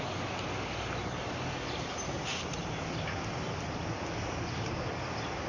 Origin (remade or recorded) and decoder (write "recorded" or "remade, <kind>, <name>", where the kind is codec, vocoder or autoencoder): recorded